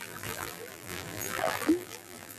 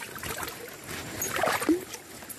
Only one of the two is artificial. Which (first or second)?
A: first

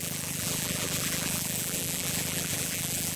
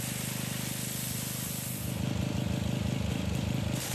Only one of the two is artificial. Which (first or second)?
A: first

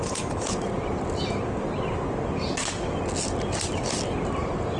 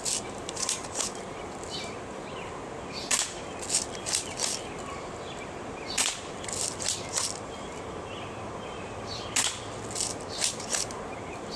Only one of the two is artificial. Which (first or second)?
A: second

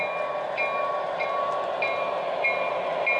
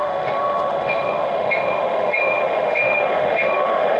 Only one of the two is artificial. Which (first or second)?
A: second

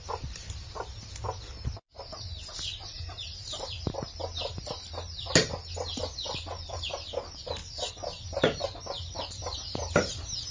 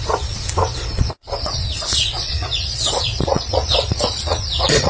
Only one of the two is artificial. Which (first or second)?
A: second